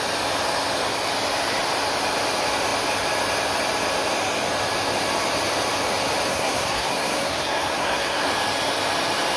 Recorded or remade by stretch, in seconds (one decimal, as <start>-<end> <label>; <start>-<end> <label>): 0.0-6.3 recorded; 6.3-8.3 remade; 8.3-9.4 recorded